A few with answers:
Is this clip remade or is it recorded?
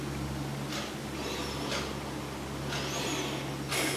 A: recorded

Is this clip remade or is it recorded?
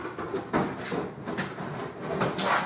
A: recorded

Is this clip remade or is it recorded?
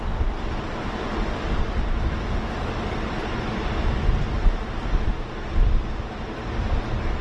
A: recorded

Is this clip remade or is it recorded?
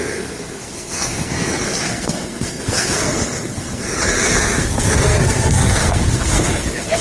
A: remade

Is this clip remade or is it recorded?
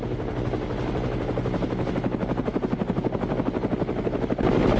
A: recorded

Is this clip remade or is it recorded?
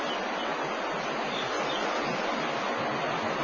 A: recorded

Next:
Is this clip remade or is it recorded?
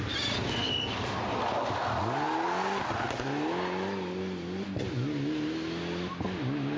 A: recorded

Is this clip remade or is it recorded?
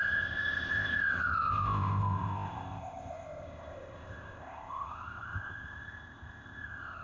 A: remade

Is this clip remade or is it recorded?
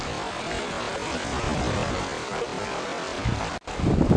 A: recorded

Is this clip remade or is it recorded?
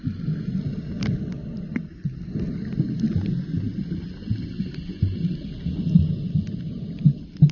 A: recorded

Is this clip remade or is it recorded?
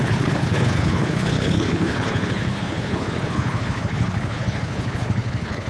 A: remade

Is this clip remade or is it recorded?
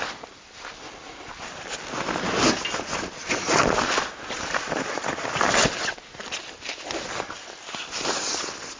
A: recorded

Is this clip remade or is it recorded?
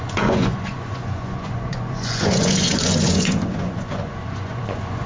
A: remade